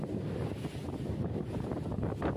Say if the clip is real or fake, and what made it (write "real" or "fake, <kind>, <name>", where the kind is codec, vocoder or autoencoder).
real